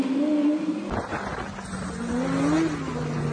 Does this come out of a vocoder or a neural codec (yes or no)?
no